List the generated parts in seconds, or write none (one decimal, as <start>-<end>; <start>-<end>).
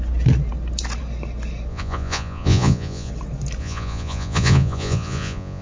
1.7-3.1; 3.6-5.6